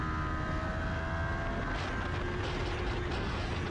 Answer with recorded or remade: recorded